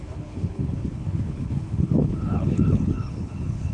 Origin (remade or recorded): remade